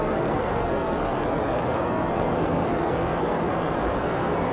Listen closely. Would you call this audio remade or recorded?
remade